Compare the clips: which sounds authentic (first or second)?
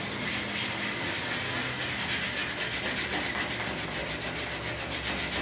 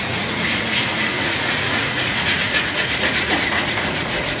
first